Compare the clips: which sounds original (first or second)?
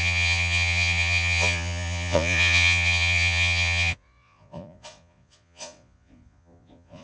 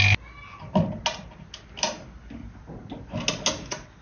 second